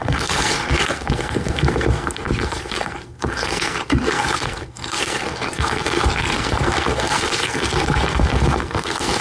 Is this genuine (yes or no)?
no